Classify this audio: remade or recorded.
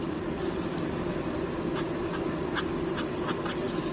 recorded